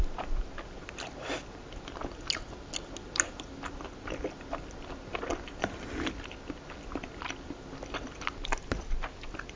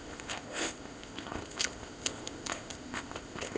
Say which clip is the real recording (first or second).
first